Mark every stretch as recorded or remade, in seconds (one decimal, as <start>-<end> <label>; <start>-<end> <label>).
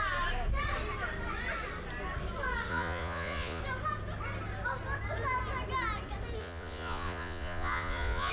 0.0-2.7 recorded; 2.7-3.6 remade; 3.6-6.4 recorded; 6.4-8.3 remade